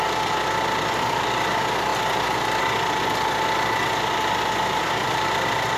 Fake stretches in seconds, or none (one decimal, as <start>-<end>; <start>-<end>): none